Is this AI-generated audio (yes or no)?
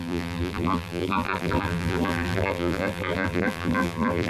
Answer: yes